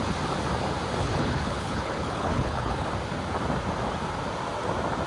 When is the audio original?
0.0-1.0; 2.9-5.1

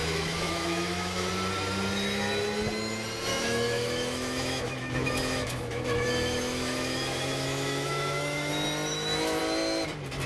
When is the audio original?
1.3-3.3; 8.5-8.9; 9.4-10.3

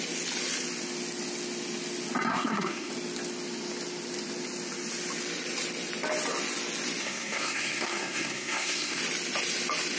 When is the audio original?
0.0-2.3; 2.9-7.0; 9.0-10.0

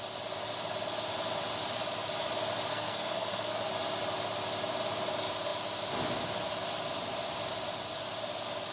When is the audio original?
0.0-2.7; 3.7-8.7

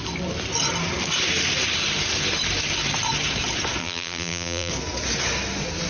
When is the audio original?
0.0-3.8; 4.7-5.9

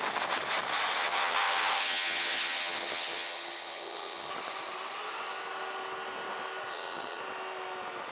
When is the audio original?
0.0-1.0; 4.3-6.7; 7.2-8.1

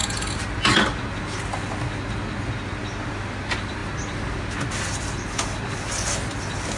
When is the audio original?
0.0-6.8

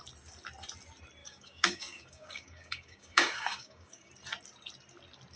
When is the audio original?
0.0-1.2; 4.1-5.4